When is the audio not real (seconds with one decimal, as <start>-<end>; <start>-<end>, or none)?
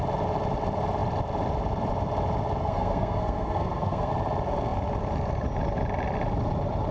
2.6-4.1